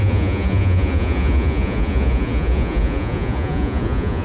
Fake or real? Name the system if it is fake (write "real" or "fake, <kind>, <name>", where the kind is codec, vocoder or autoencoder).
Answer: fake, vocoder, Vocos